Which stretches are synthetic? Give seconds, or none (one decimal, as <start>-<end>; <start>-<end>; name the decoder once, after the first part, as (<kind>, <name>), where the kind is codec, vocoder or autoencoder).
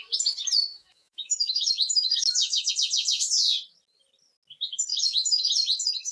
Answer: 0.7-2.7 (autoencoder, DAC-VAE); 4.9-5.4